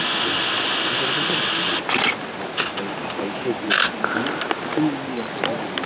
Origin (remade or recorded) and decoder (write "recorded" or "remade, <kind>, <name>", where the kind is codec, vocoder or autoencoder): recorded